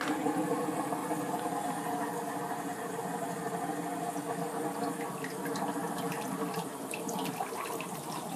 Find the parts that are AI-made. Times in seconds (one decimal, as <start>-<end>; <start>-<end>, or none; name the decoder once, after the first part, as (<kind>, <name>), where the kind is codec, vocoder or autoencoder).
5.8-8.4 (vocoder, BigVGAN v2)